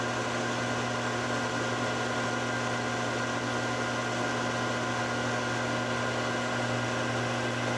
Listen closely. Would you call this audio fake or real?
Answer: real